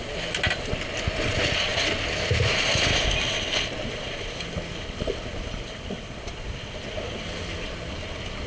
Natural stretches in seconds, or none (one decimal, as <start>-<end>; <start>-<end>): 0.0-8.5